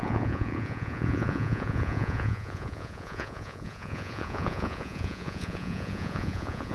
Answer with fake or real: fake